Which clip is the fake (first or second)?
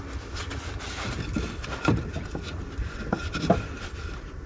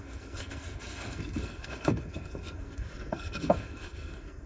second